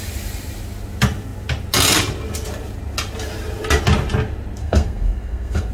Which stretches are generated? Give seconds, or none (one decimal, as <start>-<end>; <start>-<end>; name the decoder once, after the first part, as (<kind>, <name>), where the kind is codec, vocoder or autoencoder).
4.6-5.7 (codec, SNAC)